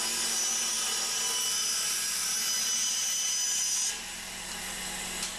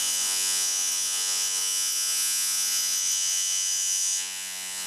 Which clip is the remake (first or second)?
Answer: second